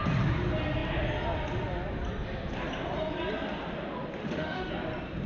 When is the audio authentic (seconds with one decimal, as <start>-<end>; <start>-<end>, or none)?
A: 0.0-4.2; 4.7-5.3